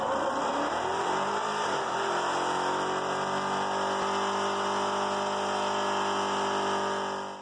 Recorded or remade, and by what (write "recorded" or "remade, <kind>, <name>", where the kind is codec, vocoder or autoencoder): recorded